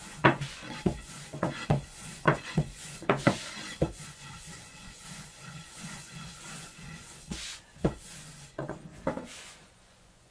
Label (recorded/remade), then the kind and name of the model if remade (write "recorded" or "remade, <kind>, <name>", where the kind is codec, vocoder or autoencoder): remade, vocoder, Vocos